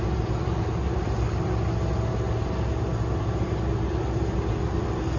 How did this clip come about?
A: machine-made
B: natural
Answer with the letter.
B